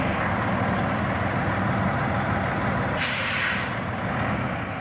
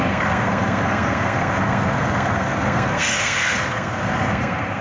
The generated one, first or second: second